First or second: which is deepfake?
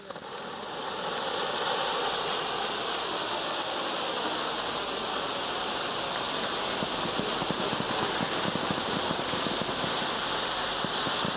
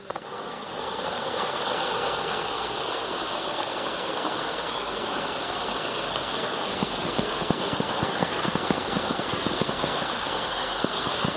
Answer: second